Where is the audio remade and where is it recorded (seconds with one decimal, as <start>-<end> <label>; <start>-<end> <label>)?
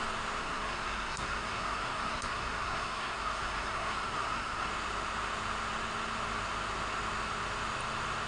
0.0-0.4 recorded; 0.4-4.7 remade; 4.7-8.3 recorded